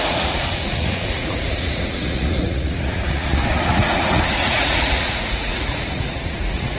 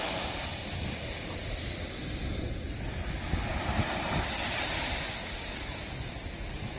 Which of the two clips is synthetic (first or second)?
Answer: first